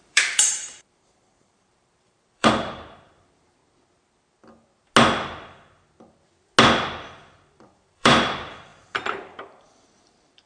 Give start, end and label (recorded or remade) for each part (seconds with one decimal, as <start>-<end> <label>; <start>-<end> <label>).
0.0-3.6 remade; 3.6-7.5 recorded; 7.5-10.5 remade